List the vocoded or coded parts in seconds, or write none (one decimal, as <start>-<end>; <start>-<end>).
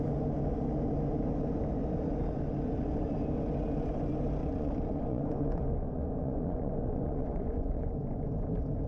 4.4-8.3